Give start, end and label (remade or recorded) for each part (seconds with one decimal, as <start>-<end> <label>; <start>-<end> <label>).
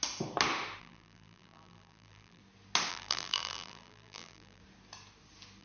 0.0-0.8 recorded; 0.8-2.4 remade; 2.4-2.9 recorded; 2.9-4.6 remade; 4.6-5.6 recorded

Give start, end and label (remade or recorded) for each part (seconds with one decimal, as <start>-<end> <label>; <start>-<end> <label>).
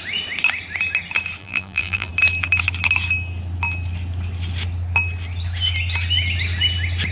0.0-1.4 recorded; 1.4-2.1 remade; 2.1-7.1 recorded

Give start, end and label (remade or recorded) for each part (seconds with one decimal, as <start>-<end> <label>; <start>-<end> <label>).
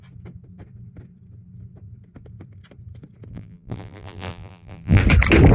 0.0-3.3 recorded; 3.3-5.0 remade; 5.0-5.5 recorded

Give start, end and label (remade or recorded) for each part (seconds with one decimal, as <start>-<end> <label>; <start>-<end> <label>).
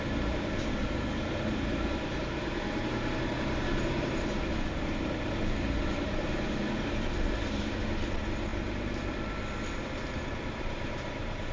0.0-8.5 remade; 8.5-10.4 recorded; 10.4-11.5 remade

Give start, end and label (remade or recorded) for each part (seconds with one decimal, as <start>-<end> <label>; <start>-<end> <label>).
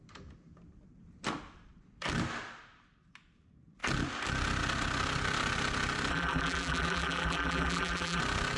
0.0-6.1 recorded; 6.1-8.2 remade; 8.2-8.6 recorded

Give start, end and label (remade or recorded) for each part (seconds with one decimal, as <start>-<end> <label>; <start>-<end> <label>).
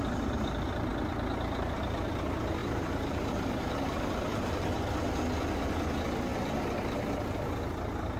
0.0-2.6 recorded; 2.6-4.6 remade; 4.6-8.2 recorded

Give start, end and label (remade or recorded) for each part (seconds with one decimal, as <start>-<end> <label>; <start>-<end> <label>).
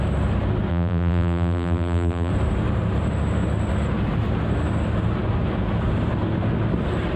0.0-0.7 recorded; 0.7-2.3 remade; 2.3-7.2 recorded